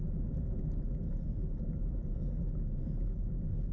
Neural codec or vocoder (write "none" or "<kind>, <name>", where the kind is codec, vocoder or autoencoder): none